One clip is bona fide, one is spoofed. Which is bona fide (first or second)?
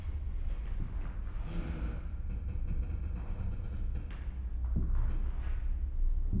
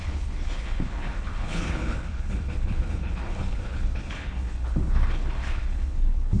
first